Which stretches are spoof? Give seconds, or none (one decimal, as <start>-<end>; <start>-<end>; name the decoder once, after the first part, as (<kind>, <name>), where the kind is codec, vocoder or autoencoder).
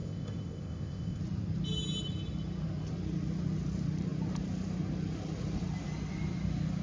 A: 0.0-1.2 (codec, ZipCodec)